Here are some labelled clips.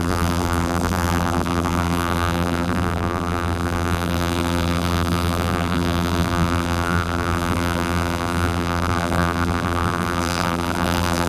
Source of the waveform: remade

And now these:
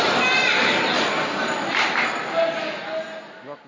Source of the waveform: recorded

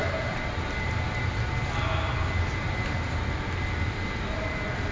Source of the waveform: remade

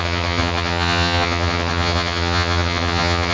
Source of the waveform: remade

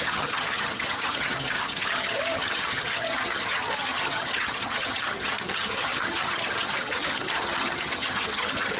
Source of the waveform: remade